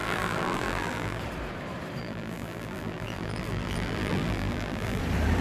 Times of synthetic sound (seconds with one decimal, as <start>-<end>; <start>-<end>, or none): 0.0-1.2; 2.0-5.0